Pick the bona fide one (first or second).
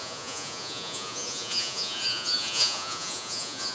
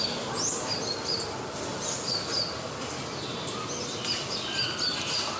second